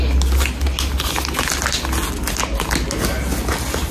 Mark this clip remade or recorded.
recorded